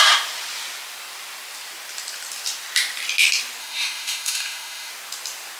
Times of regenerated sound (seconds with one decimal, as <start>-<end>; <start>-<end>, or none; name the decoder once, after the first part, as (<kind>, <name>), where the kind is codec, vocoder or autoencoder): 3.6-4.9 (autoencoder, DAC-VAE)

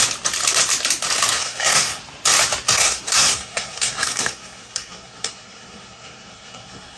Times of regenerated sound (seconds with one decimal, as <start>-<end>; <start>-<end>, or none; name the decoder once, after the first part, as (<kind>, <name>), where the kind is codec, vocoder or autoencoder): 1.3-2.0 (codec, SNAC); 2.7-7.0

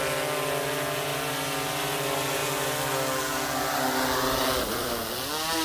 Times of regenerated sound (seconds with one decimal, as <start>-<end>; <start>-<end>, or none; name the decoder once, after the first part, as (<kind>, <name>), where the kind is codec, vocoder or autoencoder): none

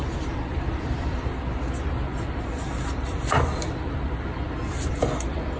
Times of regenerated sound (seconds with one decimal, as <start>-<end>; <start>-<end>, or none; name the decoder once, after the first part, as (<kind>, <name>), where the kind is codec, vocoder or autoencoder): 0.0-1.4 (vocoder, BigVGAN v2); 2.1-5.6